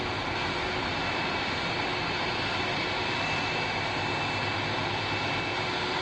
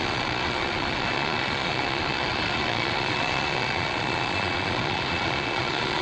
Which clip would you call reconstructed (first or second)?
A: second